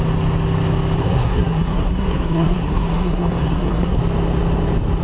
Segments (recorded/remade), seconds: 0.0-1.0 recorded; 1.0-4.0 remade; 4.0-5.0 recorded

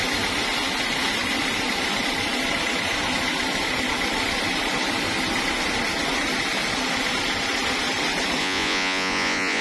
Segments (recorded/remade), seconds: 0.0-8.4 recorded; 8.4-9.6 remade

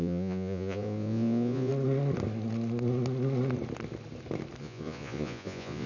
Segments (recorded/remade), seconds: 0.0-1.7 remade; 1.7-4.6 recorded; 4.6-5.9 remade